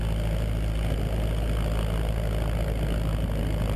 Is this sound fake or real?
real